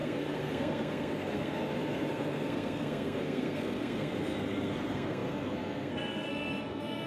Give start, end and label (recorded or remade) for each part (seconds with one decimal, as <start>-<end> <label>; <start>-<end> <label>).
0.0-7.1 remade